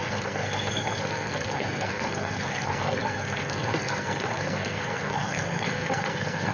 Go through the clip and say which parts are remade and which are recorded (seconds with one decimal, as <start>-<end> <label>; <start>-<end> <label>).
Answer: 0.0-6.5 remade